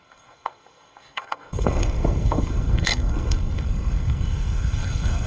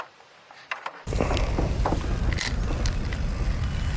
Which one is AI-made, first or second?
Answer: first